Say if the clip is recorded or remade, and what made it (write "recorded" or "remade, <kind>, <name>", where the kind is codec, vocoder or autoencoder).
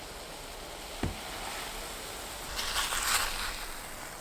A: recorded